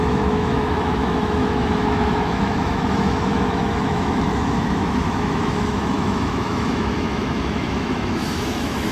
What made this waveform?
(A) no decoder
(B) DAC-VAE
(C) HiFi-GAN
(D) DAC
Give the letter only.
B